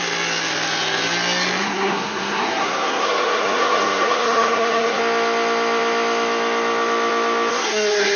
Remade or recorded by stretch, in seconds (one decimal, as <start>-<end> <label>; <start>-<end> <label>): 0.0-1.6 recorded; 1.6-5.0 remade; 5.0-7.5 recorded; 7.5-8.2 remade